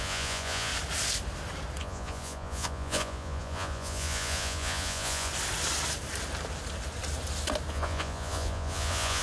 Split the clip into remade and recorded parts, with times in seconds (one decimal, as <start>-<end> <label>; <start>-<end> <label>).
0.0-0.7 remade; 0.7-1.8 recorded; 1.8-5.3 remade; 5.3-7.7 recorded; 7.7-9.2 remade

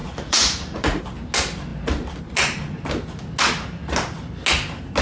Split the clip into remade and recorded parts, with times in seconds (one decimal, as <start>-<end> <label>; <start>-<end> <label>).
0.0-1.0 remade; 1.0-5.0 recorded

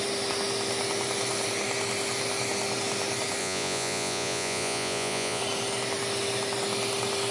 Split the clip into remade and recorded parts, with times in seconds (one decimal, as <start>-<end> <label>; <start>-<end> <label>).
0.0-3.4 recorded; 3.4-5.4 remade; 5.4-7.3 recorded

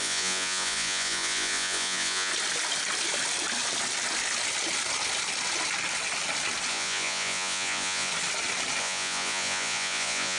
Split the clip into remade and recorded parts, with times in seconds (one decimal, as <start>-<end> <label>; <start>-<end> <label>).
0.0-2.3 remade; 2.3-6.7 recorded; 6.7-8.1 remade; 8.1-8.8 recorded; 8.8-10.4 remade

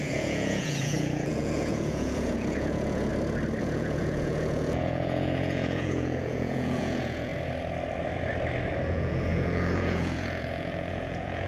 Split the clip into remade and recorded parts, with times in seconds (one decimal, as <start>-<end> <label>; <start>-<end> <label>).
0.0-3.1 remade; 3.1-3.6 recorded; 3.6-7.3 remade; 7.3-8.9 recorded; 8.9-11.5 remade

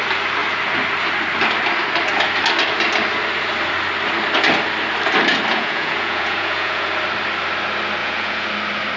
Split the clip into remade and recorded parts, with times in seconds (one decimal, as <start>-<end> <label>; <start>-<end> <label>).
0.0-5.5 recorded; 5.5-6.9 remade; 6.9-8.0 recorded; 8.0-8.5 remade; 8.5-9.0 recorded

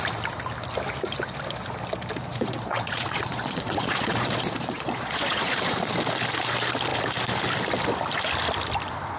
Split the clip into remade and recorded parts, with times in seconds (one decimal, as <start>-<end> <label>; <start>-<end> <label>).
0.0-2.3 recorded; 2.3-5.8 remade; 5.8-9.2 recorded

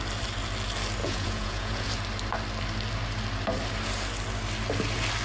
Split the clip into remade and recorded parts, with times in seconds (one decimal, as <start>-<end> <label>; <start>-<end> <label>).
0.0-1.0 recorded; 1.0-1.9 remade; 1.9-5.2 recorded